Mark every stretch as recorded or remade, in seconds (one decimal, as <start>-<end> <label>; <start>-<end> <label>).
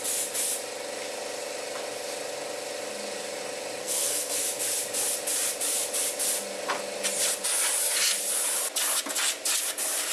0.0-3.8 recorded; 3.8-4.4 remade; 4.4-10.1 recorded